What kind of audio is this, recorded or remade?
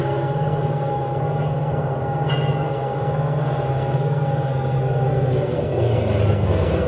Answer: remade